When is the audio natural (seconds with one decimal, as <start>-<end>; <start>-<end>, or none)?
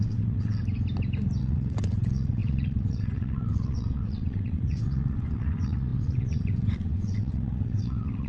0.6-1.4